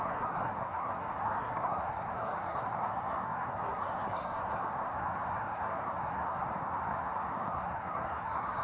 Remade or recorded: remade